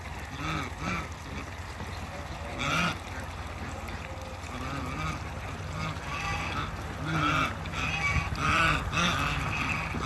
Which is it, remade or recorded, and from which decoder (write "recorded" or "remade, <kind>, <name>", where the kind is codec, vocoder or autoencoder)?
recorded